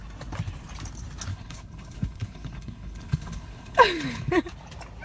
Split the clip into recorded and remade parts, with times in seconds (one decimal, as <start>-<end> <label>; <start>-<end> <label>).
0.0-1.3 recorded; 1.3-4.3 remade; 4.3-5.0 recorded

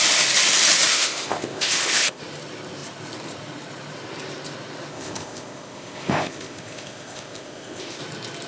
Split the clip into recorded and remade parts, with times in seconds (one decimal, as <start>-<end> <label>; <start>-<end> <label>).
0.0-0.9 recorded; 0.9-2.2 remade; 2.2-4.9 recorded; 4.9-8.0 remade; 8.0-8.5 recorded

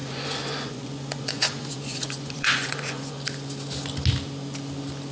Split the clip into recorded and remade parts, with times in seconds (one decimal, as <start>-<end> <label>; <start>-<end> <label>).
0.0-3.1 remade; 3.1-5.1 recorded

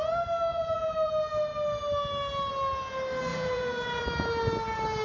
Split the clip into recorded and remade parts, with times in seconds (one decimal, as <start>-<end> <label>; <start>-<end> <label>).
0.0-0.5 recorded; 0.5-1.1 remade; 1.1-3.3 recorded; 3.3-4.0 remade; 4.0-5.0 recorded

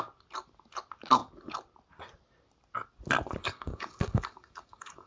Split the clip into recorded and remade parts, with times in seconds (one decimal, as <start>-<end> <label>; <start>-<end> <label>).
0.0-3.4 recorded; 3.4-5.1 remade

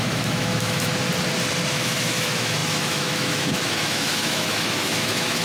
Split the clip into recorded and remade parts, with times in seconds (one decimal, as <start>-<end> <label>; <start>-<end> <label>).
0.0-0.9 remade; 0.9-1.7 recorded; 1.7-5.4 remade

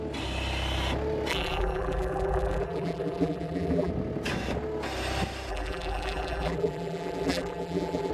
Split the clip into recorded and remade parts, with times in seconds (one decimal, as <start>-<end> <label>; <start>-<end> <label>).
0.0-1.3 recorded; 1.3-3.9 remade; 3.9-5.5 recorded; 5.5-8.1 remade